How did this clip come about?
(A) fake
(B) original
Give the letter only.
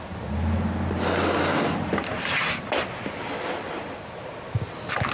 B